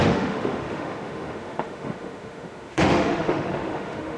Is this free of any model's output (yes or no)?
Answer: no